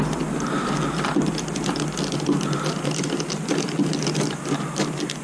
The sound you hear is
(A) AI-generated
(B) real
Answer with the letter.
B